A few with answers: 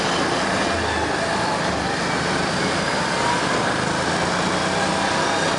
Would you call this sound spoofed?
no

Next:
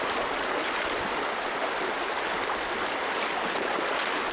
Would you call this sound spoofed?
no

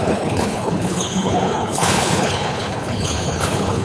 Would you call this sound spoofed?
yes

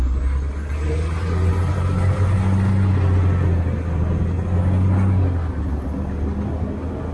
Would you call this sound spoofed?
no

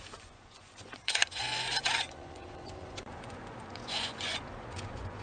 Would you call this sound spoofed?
yes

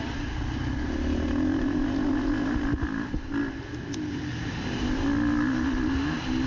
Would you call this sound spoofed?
no